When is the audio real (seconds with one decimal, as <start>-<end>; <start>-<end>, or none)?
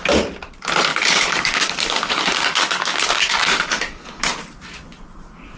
0.0-0.9; 4.3-5.6